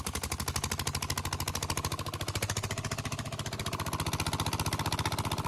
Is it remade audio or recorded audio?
recorded